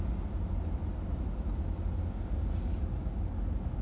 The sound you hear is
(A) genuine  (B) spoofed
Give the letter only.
A